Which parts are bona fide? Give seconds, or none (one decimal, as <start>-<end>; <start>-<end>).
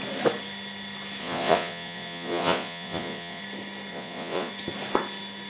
0.0-1.2; 3.4-3.9; 4.5-5.5